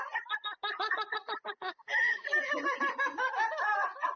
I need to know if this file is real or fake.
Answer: real